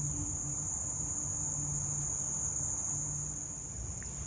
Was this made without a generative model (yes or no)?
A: yes